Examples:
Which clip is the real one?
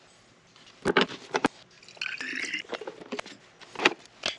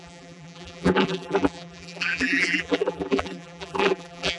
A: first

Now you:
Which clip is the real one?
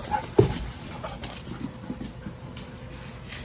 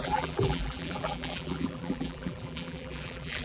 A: first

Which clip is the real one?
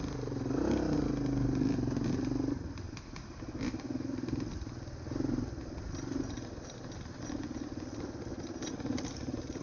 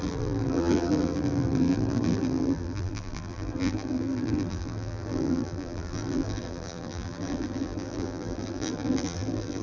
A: first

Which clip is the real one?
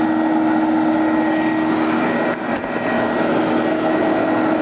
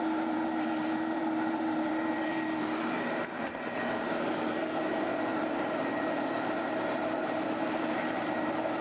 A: first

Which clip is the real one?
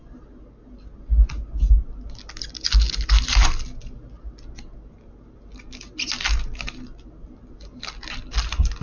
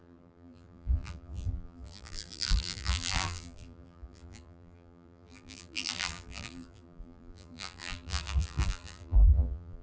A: first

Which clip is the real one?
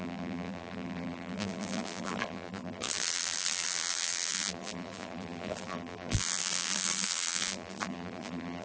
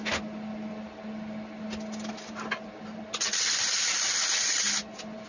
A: second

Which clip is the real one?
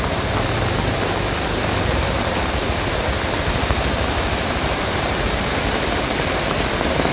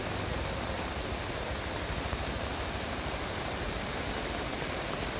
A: second